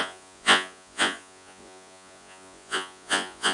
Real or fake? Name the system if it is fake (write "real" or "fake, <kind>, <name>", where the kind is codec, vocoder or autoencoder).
fake, vocoder, Vocos